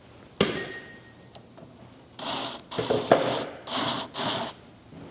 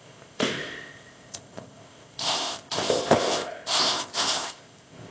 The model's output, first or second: second